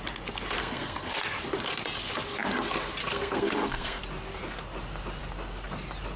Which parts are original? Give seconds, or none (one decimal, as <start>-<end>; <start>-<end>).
0.0-0.6; 1.2-3.0; 4.0-6.2

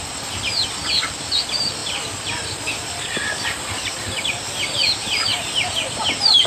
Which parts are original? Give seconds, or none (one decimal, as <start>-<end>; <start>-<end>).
5.3-5.9

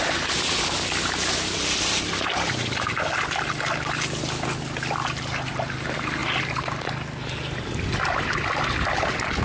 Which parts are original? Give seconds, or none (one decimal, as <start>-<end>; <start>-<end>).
0.0-6.2; 6.9-9.4

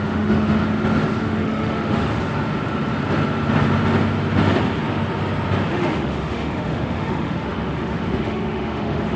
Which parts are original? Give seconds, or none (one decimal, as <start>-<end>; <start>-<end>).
0.6-1.2; 2.1-5.7

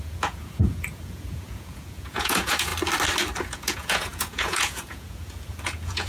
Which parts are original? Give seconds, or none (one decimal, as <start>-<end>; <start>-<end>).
2.7-3.4

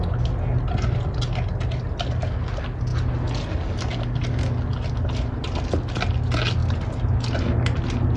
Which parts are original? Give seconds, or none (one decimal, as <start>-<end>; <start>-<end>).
0.0-8.2